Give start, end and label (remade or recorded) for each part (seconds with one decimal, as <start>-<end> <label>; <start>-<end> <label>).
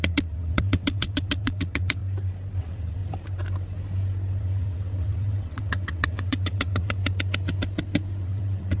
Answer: 0.0-2.0 remade; 2.0-2.6 recorded; 2.6-3.0 remade; 3.0-4.4 recorded; 4.4-7.0 remade; 7.0-8.2 recorded; 8.2-8.8 remade